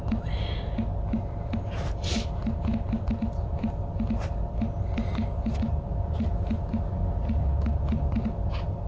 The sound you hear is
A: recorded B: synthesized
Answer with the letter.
A